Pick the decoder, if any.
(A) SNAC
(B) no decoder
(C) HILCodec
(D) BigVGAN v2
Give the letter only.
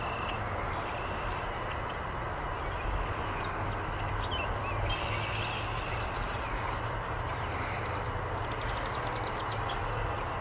B